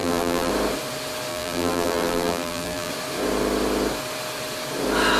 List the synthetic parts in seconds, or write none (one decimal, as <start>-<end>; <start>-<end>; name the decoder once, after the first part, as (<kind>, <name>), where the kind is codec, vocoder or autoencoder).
0.0-0.5 (vocoder, BigVGAN v2); 1.3-2.9